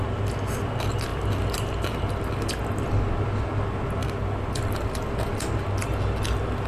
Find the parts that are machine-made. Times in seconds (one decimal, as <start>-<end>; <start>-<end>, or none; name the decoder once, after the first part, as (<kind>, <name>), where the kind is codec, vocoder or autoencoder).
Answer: 1.1-2.1 (vocoder, BigVGAN v2); 4.0-5.3